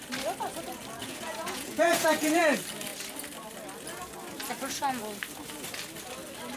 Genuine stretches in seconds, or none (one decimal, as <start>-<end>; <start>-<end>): 0.0-1.0; 2.4-6.6